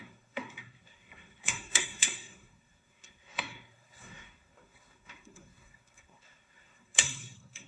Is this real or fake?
fake